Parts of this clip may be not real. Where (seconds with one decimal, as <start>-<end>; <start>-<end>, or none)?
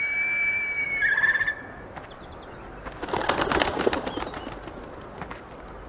none